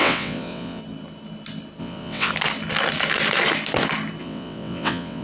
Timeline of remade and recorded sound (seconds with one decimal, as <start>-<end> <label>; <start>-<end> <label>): 0.0-0.8 remade; 0.8-1.8 recorded; 1.8-2.3 remade; 2.3-4.2 recorded; 4.2-5.2 remade